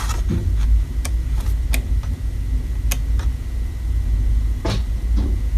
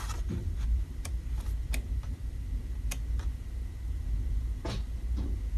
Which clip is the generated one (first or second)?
second